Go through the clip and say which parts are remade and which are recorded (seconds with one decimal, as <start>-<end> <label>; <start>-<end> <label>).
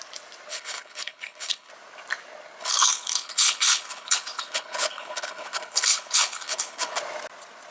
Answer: 0.0-0.5 recorded; 0.5-1.7 remade; 1.7-2.6 recorded; 2.6-7.0 remade; 7.0-7.7 recorded